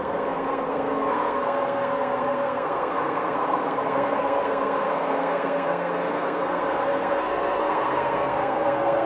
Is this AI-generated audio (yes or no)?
yes